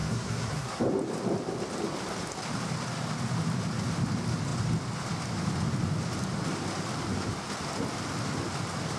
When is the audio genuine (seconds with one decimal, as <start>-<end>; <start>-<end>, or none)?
0.8-9.0